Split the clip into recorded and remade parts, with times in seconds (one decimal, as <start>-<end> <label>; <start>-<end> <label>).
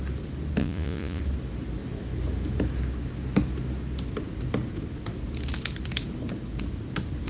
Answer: 0.0-0.6 recorded; 0.6-1.2 remade; 1.2-7.3 recorded